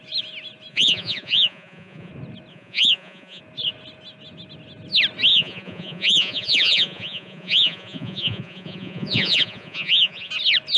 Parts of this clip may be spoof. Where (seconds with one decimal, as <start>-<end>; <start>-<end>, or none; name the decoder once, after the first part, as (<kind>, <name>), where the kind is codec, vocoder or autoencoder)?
0.7-2.1 (vocoder, Vocos); 2.5-3.4; 5.3-10.3